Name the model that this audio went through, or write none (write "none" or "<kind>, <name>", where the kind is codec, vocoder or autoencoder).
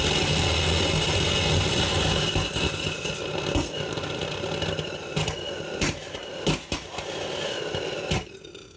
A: none